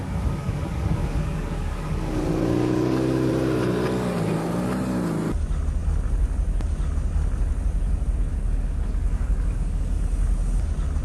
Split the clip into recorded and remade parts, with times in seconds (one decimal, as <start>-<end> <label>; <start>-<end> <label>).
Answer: 0.0-3.3 remade; 3.3-8.3 recorded; 8.3-10.0 remade; 10.0-11.0 recorded